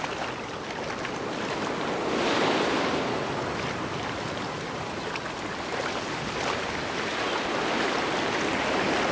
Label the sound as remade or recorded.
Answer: recorded